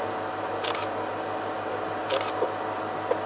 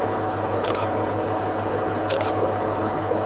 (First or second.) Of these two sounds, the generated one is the second